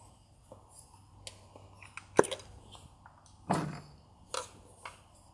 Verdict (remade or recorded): recorded